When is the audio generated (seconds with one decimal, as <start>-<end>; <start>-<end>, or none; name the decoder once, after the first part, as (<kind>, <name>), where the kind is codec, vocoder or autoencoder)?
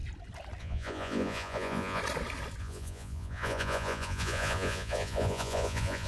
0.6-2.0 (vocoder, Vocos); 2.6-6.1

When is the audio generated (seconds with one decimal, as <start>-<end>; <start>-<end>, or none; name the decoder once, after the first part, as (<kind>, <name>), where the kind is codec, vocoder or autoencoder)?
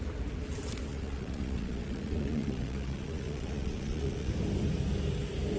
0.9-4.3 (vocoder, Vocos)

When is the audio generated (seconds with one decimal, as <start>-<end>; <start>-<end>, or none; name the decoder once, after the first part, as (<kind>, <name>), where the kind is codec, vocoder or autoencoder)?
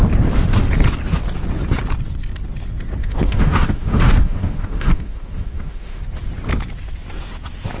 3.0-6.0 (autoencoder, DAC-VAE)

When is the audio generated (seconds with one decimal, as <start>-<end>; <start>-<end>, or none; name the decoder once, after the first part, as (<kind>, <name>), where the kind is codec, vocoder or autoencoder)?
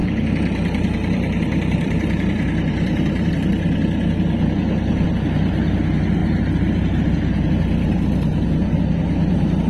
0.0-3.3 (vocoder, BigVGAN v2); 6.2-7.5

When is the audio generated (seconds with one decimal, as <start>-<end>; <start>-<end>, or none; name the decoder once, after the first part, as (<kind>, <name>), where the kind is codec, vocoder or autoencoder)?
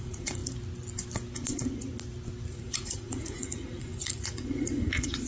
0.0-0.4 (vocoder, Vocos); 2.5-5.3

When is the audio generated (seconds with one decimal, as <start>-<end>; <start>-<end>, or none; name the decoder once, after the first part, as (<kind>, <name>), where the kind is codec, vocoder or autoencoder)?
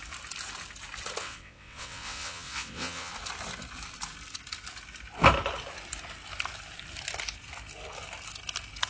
1.2-3.1 (vocoder, WaveNeXt)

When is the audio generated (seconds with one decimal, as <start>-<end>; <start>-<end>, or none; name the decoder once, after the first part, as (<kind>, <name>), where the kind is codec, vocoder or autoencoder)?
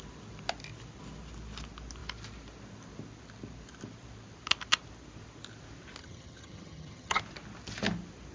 6.0-7.2 (vocoder, HiFi-GAN)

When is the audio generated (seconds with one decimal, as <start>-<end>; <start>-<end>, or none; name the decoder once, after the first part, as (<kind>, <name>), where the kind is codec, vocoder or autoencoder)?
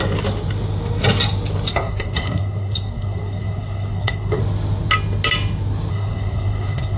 1.7-4.4 (codec, SNAC); 5.9-7.0